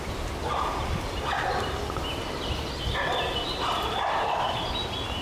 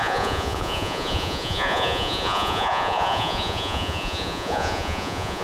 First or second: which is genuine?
first